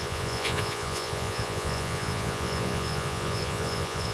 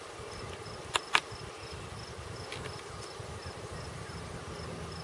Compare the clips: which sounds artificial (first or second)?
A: first